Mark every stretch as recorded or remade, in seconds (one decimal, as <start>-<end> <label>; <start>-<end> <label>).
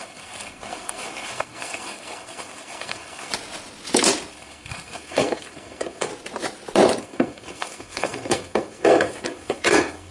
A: 0.0-3.3 remade; 3.3-4.3 recorded; 4.3-6.1 remade; 6.1-7.0 recorded; 7.0-10.1 remade